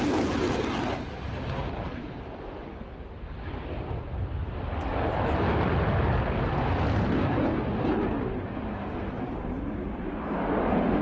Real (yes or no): yes